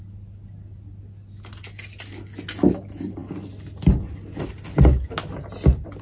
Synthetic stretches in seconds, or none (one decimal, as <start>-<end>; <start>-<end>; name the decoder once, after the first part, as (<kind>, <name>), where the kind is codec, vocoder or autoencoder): none